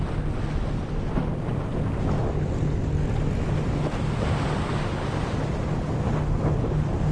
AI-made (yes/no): no